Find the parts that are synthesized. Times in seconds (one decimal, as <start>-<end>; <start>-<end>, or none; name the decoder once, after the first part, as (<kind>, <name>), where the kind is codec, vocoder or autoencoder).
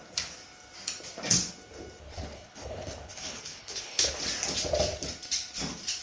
2.0-4.2 (codec, HILCodec)